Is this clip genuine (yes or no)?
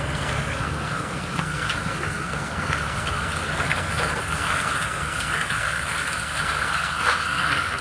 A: no